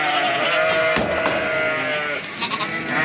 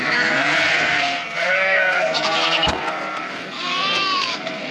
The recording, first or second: first